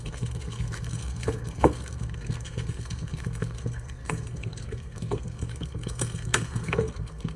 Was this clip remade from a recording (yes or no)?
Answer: yes